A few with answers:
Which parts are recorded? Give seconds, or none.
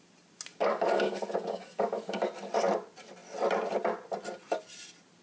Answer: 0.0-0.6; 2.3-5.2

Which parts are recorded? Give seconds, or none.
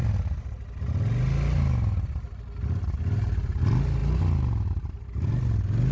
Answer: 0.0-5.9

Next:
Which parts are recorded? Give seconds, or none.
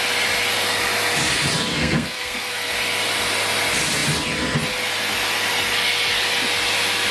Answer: 0.0-1.7; 2.7-7.1